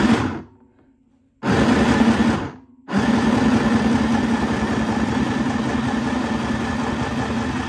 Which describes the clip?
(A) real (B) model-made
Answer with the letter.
A